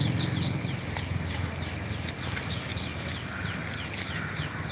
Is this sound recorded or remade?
recorded